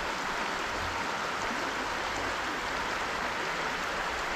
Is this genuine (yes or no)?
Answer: yes